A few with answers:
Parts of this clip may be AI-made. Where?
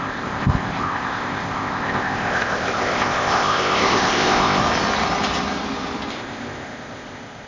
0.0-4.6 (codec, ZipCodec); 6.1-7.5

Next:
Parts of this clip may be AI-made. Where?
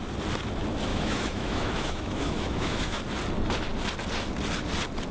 0.9-3.0 (autoencoder, DAC-VAE)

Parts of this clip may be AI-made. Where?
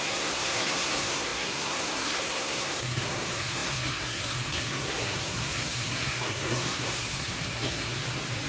0.0-8.0 (codec, SNAC)